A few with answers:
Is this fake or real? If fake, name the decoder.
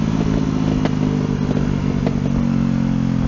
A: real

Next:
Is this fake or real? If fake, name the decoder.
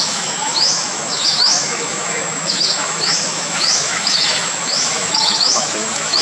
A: fake, autoencoder, DAC-VAE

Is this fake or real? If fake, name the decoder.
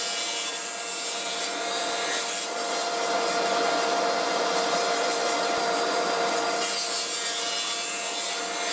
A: real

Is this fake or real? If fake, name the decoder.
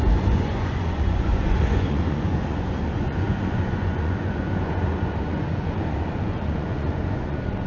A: fake, vocoder, Vocos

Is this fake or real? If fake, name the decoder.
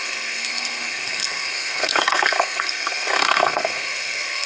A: fake, codec, SNAC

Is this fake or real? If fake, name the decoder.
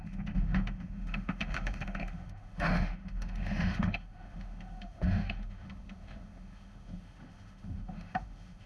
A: fake, autoencoder, DAC-VAE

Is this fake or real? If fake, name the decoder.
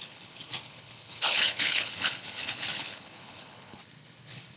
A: fake, codec, HILCodec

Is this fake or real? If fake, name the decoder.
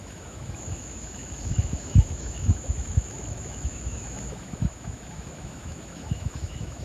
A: fake, autoencoder, DAC-VAE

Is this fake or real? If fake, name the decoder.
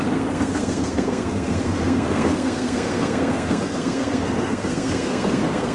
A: fake, codec, SNAC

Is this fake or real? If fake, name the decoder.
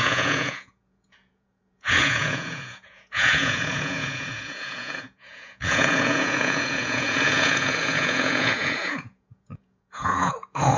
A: fake, vocoder, Vocos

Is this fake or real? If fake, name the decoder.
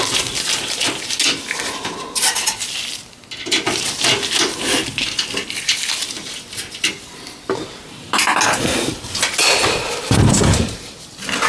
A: real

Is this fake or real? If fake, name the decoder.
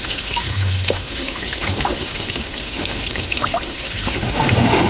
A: fake, autoencoder, DAC-VAE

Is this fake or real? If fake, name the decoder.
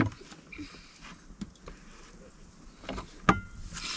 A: real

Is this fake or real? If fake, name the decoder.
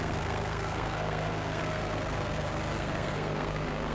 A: fake, codec, SNAC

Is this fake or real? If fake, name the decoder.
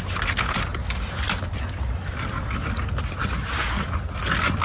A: real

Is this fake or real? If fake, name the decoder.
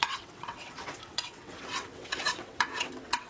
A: fake, vocoder, WaveNeXt